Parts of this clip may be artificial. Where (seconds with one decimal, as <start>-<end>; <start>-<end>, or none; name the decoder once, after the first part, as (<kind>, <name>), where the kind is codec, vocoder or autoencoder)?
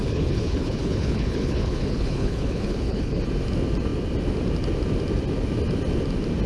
0.0-3.2 (codec, HILCodec)